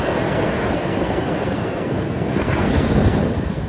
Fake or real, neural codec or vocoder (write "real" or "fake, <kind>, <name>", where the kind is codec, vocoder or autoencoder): fake, codec, SNAC